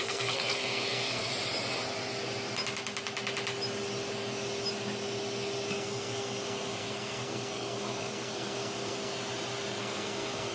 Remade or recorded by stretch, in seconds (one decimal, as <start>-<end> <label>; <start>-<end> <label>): 0.0-1.3 remade; 1.3-5.7 recorded; 5.7-9.1 remade; 9.1-9.8 recorded; 9.8-10.5 remade